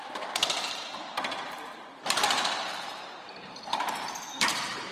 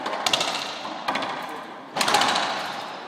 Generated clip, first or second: first